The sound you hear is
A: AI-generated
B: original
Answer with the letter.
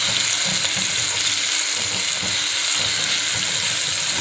B